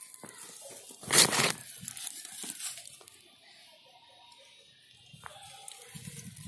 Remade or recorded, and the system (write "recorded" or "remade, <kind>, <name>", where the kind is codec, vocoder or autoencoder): recorded